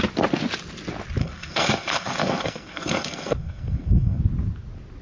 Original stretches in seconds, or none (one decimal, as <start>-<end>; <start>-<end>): 0.0-1.2; 4.2-5.0